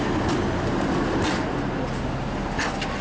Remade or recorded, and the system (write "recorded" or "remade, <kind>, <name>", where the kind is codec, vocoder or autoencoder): recorded